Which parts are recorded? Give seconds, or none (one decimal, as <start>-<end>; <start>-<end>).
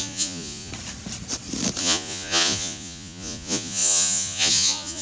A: 0.7-1.8